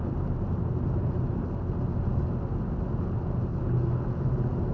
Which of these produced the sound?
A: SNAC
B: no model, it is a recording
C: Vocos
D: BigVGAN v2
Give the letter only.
B